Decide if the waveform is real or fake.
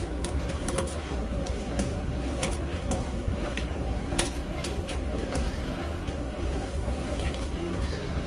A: fake